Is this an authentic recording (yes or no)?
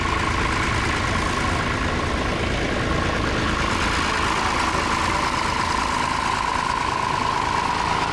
yes